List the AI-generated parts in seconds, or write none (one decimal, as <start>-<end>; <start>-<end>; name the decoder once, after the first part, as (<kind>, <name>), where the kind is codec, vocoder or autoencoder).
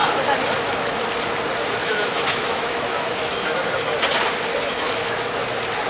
1.8-3.7 (autoencoder, DAC-VAE); 4.5-5.1